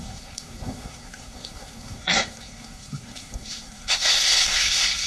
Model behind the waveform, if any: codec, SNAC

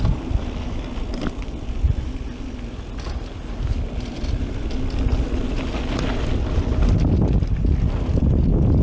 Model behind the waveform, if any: none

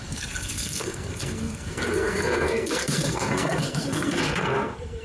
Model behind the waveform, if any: codec, SNAC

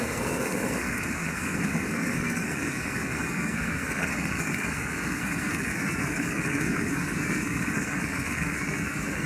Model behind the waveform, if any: codec, SNAC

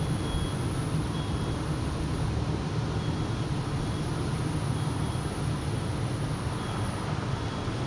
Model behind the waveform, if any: none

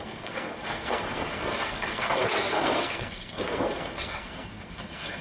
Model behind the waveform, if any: codec, SNAC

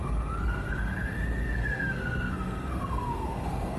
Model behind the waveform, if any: codec, SNAC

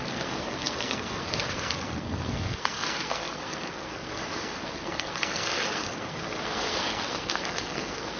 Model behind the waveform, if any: codec, SNAC